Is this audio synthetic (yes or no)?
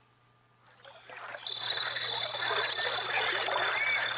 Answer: no